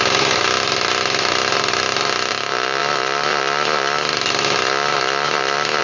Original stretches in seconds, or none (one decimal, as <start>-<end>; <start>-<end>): 0.0-5.8